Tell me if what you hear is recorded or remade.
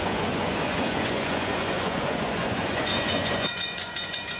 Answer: remade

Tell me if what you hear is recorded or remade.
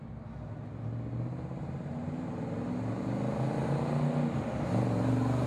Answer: recorded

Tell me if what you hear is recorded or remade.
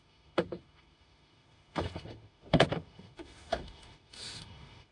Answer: remade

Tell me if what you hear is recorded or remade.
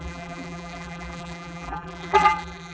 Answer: remade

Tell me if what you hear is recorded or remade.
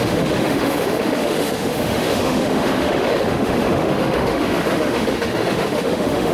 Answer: remade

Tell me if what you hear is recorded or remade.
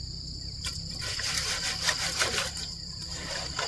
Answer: remade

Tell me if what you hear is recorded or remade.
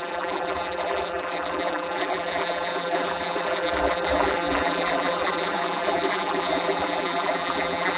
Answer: remade